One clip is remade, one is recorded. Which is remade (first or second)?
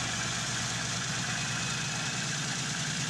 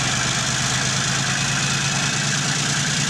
first